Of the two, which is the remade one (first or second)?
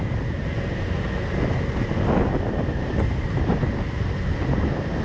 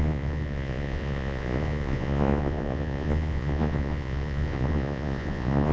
second